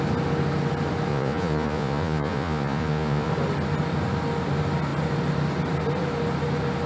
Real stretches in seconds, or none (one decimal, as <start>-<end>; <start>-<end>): 0.0-1.1; 3.3-6.9

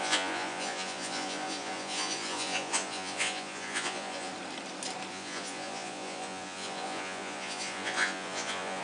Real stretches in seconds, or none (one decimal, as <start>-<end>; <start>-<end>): 4.3-5.1